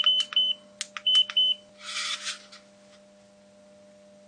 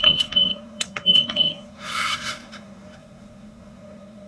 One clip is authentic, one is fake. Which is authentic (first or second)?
first